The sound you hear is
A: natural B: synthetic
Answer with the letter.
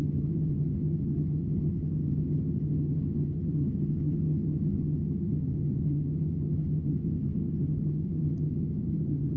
B